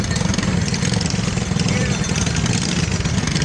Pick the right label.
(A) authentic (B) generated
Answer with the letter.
A